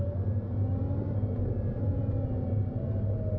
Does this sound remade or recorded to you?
recorded